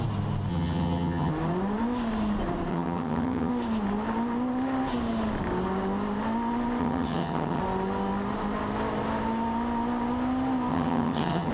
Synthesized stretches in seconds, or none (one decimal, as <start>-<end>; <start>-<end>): 0.5-1.3; 2.7-3.5; 6.8-7.6; 10.7-11.5